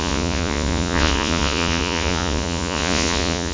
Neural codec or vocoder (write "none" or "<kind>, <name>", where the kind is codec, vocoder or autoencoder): vocoder, Vocos